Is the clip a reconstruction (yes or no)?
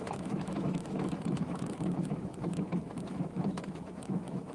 yes